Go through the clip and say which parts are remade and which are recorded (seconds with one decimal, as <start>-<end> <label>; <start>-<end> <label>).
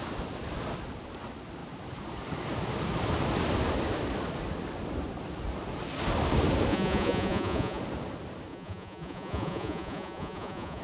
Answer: 0.0-6.7 recorded; 6.7-7.8 remade; 7.8-8.5 recorded; 8.5-10.8 remade